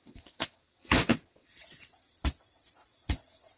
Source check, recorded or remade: remade